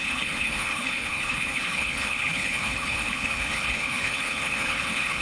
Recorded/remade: remade